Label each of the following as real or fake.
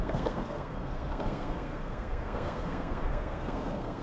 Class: fake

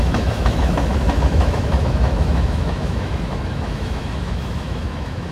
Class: fake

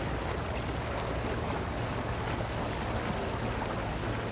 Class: real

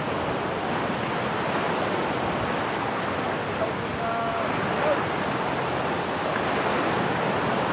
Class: real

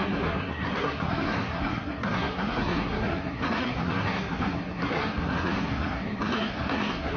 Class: fake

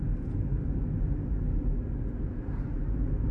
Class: real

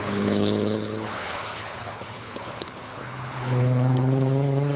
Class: fake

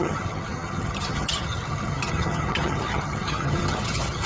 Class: fake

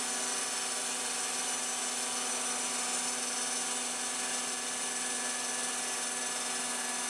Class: real